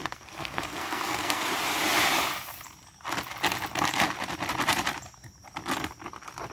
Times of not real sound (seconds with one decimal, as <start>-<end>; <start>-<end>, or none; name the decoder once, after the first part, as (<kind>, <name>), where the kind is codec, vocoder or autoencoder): 0.0-1.5 (codec, SNAC)